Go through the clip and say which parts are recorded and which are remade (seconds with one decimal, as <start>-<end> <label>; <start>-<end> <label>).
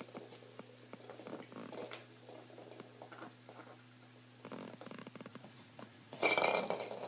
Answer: 0.0-5.3 recorded; 5.3-6.3 remade; 6.3-7.1 recorded